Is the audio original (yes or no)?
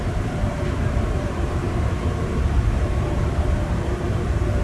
no